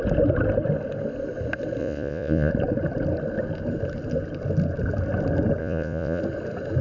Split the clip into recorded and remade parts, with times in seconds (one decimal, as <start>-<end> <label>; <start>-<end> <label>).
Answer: 0.0-1.8 recorded; 1.8-2.5 remade; 2.5-5.6 recorded; 5.6-6.2 remade; 6.2-6.8 recorded